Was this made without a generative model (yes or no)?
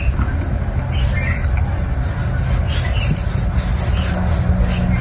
yes